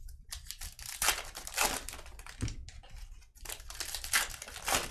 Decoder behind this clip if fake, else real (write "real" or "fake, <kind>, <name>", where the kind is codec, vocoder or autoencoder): real